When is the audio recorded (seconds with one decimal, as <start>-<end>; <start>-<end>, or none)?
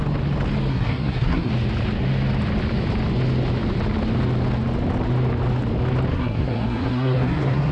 0.0-0.7; 1.5-6.1